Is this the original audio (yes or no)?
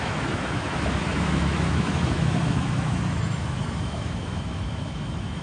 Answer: no